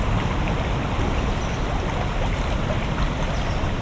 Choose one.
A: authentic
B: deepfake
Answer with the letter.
A